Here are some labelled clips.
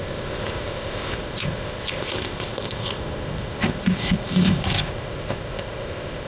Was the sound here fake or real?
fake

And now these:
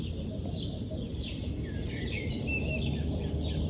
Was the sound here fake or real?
real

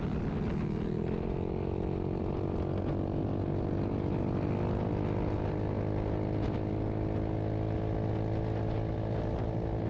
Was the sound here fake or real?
real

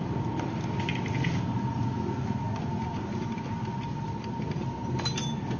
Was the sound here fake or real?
real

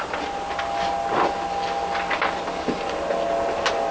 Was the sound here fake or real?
real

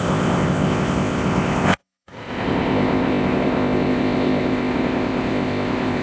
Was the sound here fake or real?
fake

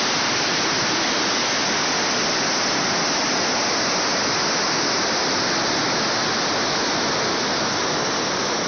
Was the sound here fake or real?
real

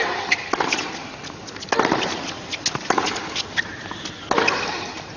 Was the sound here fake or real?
real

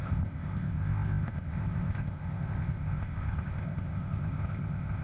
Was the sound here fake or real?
fake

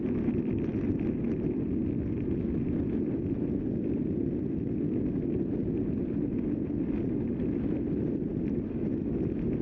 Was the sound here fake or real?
real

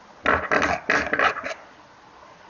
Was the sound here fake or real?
real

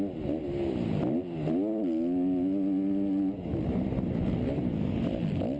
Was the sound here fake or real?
real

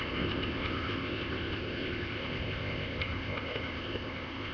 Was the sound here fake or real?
fake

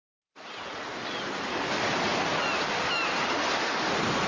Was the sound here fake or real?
real